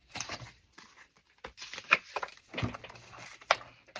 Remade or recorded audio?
recorded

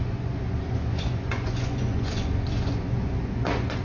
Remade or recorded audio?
remade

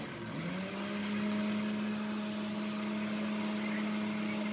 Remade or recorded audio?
recorded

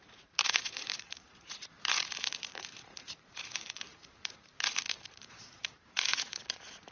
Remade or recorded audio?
remade